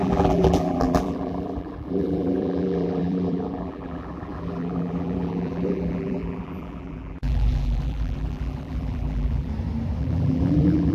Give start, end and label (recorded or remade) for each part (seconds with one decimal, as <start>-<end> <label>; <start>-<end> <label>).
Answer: 0.0-9.5 remade; 9.5-10.0 recorded; 10.0-10.9 remade